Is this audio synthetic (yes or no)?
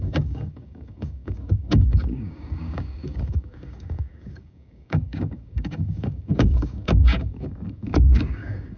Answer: yes